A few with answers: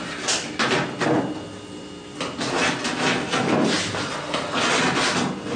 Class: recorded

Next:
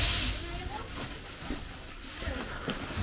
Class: recorded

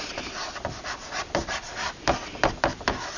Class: remade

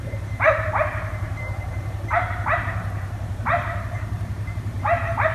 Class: remade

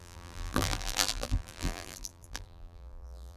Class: remade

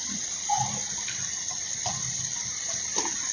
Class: recorded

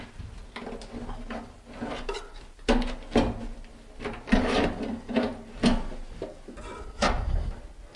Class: recorded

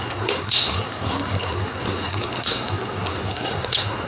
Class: remade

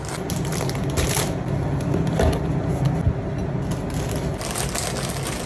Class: recorded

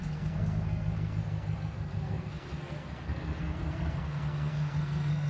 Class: remade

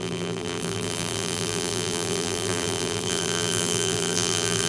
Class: remade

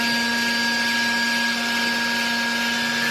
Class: recorded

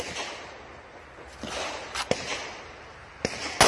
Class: recorded